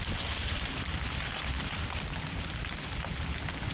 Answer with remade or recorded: recorded